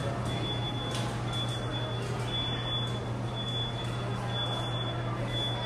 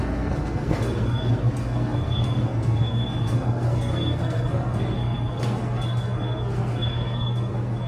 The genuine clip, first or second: first